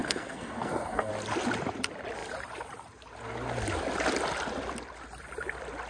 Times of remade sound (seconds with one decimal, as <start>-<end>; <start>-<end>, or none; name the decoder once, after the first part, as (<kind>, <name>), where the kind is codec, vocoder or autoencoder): 0.0-1.1 (codec, SNAC)